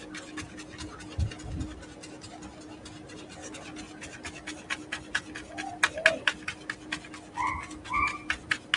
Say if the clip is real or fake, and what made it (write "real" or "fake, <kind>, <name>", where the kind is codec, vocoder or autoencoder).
real